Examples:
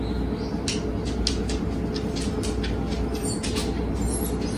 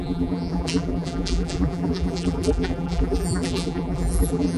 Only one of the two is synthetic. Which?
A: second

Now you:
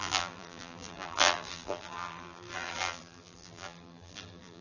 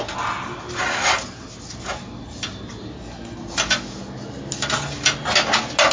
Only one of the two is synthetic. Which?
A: first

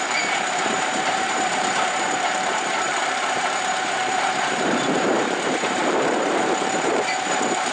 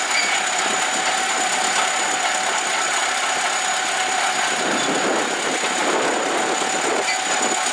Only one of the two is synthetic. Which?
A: first